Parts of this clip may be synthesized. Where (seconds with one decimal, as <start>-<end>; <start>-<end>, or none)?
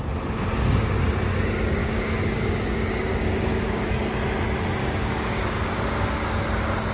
1.8-4.0; 4.8-6.4